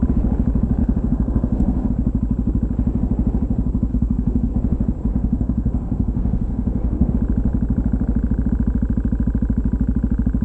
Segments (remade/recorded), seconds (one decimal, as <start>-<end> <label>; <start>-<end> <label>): 0.0-0.8 recorded; 0.8-1.9 remade; 1.9-3.9 recorded; 3.9-4.5 remade; 4.5-5.1 recorded; 5.1-7.1 remade; 7.1-10.4 recorded